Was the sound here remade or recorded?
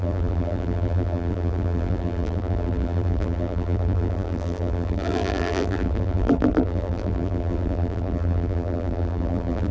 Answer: remade